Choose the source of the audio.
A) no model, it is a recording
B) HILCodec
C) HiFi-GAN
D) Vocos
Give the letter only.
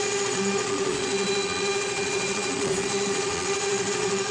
D